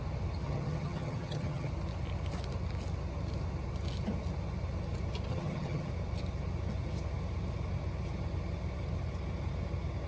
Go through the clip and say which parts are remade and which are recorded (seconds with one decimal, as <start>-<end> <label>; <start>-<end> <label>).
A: 0.0-0.4 recorded; 0.4-1.7 remade; 1.7-5.3 recorded; 5.3-5.9 remade; 5.9-10.1 recorded